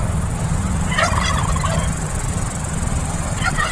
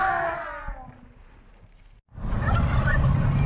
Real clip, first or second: second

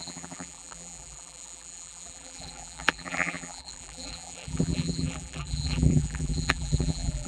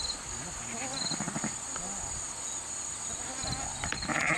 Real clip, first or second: second